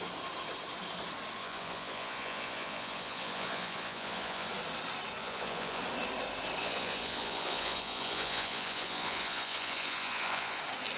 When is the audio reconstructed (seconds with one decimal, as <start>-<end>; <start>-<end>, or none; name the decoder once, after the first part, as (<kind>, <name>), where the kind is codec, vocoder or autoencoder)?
1.4-4.5 (vocoder, Vocos); 5.2-5.8; 6.6-10.6